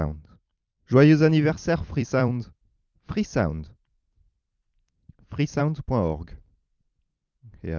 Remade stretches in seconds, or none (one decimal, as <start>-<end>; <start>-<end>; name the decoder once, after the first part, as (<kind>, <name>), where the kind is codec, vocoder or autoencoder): 0.7-2.6 (vocoder, BigVGAN v2); 3.3-5.6; 6.4-7.8